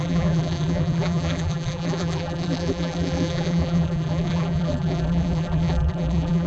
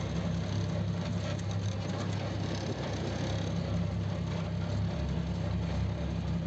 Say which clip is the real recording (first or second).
second